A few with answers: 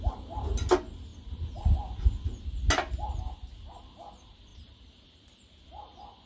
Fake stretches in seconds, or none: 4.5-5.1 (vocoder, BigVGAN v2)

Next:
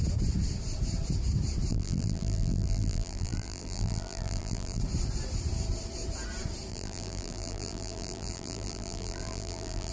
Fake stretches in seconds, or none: 1.7-4.8 (vocoder, BigVGAN v2); 6.7-9.9

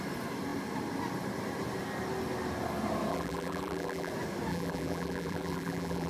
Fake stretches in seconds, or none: 3.1-4.1 (vocoder, BigVGAN v2); 4.5-6.1

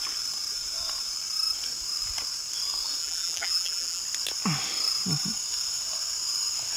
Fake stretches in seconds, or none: 3.0-4.0 (vocoder, BigVGAN v2)

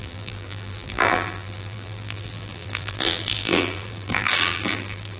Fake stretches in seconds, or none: 0.0-5.2 (vocoder, BigVGAN v2)

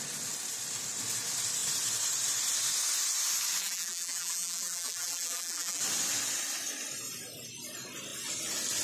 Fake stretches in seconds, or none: 3.6-5.8 (vocoder, BigVGAN v2)